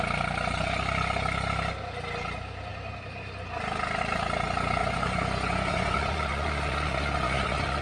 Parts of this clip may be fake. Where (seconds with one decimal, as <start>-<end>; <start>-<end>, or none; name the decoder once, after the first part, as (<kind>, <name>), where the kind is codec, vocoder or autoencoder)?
4.8-7.8 (vocoder, Vocos)

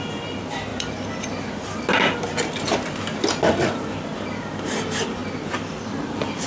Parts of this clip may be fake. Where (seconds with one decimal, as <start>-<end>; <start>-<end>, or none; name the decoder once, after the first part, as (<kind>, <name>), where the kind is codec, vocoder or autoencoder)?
none